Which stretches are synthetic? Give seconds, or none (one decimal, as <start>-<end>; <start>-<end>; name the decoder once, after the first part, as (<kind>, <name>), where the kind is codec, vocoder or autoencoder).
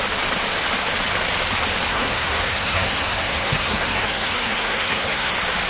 1.9-5.3 (codec, SNAC)